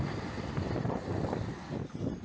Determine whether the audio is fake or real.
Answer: real